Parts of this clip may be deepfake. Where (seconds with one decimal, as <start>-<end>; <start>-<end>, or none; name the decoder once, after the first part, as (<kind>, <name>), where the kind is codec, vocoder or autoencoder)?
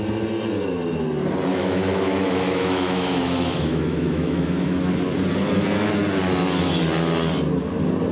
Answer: 1.5-4.9 (autoencoder, DAC-VAE)